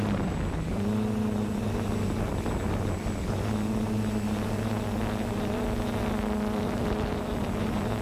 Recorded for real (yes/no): yes